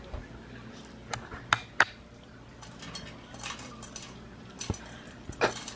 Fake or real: real